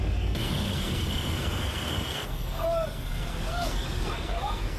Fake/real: fake